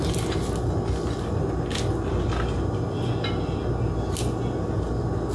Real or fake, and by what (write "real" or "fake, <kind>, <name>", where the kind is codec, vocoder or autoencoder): real